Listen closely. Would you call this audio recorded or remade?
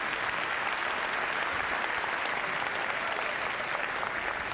recorded